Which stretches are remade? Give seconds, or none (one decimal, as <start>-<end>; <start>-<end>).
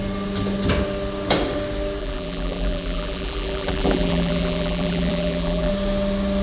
2.0-5.7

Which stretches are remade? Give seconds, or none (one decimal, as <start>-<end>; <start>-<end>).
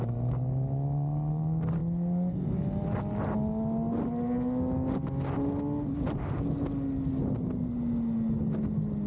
none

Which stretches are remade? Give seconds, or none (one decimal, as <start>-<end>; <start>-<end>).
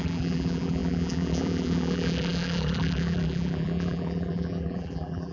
0.0-5.3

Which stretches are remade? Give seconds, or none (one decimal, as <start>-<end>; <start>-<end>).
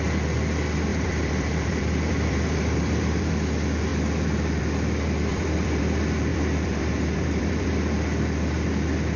0.9-3.3; 5.3-5.8; 6.3-7.7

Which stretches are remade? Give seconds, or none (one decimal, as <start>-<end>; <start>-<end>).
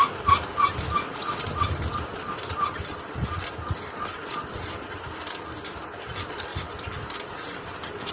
2.1-3.4; 6.5-8.1